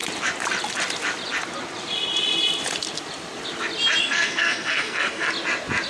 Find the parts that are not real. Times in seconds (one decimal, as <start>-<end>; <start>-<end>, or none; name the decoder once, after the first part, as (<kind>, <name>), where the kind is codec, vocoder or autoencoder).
4.0-5.3 (codec, SNAC)